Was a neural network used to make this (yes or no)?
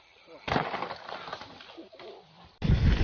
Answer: no